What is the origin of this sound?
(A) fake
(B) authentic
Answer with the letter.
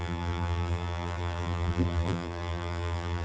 A